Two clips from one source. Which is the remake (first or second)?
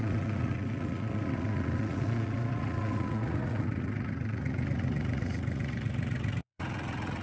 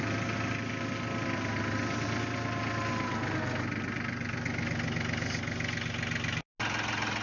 first